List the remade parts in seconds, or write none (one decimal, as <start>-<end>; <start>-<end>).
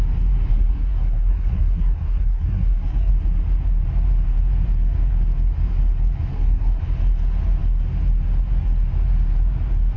0.5-3.1; 6.3-6.8